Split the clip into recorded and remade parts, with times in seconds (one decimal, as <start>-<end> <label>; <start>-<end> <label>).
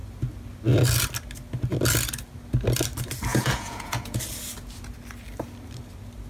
0.0-3.3 recorded; 3.3-4.2 remade; 4.2-6.3 recorded